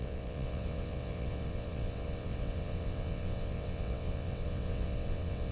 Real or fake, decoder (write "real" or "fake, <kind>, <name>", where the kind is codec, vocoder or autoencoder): fake, vocoder, WaveNeXt